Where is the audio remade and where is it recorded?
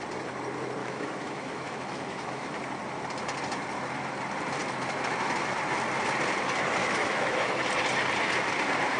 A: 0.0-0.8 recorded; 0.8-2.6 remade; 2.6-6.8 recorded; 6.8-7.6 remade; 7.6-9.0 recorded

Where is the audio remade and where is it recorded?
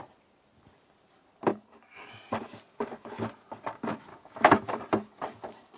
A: 0.0-1.5 recorded; 1.5-2.1 remade; 2.1-4.1 recorded; 4.1-4.8 remade; 4.8-5.8 recorded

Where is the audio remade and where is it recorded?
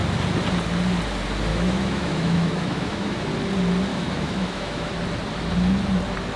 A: 0.0-1.5 recorded; 1.5-3.3 remade; 3.3-3.9 recorded; 3.9-4.9 remade; 4.9-6.4 recorded